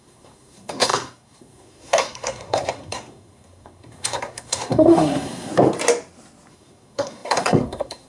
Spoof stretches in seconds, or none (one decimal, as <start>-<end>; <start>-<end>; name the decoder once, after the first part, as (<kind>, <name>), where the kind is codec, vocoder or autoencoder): 0.0-5.5 (codec, SNAC); 6.5-8.1